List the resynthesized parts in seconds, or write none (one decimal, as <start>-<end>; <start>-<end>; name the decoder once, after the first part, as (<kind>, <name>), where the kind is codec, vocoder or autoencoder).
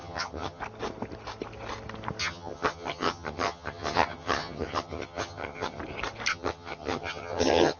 0.0-0.6 (vocoder, HiFi-GAN); 2.2-5.8; 6.3-7.8